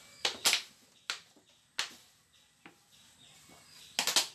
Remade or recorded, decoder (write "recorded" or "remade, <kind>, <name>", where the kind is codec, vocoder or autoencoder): recorded